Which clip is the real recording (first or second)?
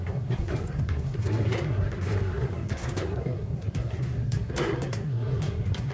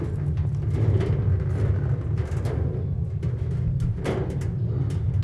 second